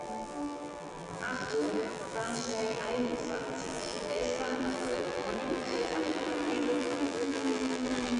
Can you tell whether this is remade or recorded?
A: remade